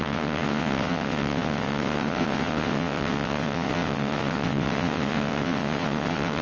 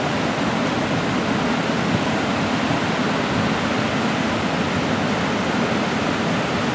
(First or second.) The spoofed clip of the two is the first